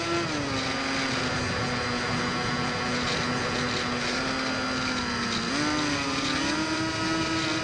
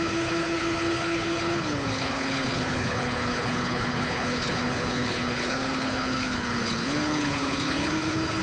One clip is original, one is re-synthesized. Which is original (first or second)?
first